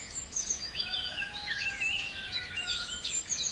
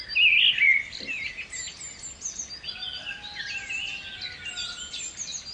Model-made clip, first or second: first